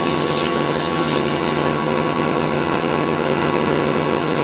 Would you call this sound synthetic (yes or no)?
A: yes